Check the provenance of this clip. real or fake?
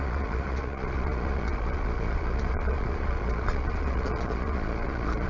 fake